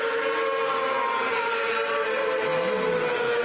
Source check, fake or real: real